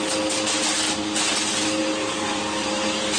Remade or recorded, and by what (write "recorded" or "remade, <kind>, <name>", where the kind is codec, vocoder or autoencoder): recorded